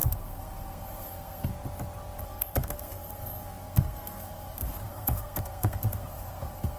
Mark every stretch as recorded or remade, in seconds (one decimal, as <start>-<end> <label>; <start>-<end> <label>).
0.0-1.5 remade; 1.5-2.2 recorded; 2.2-6.8 remade